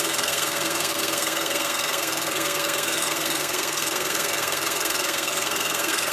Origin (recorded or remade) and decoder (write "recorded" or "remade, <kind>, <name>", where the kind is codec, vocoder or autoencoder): remade, codec, SNAC